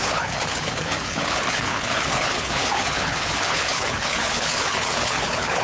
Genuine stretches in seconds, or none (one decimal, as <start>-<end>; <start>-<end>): none